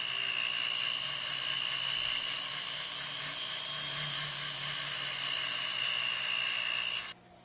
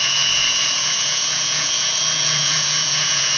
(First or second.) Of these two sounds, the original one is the first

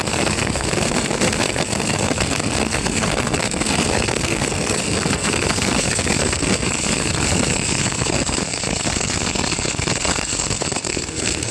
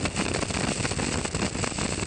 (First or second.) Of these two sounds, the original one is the second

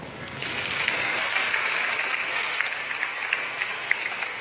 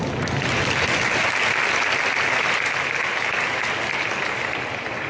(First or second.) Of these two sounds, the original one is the second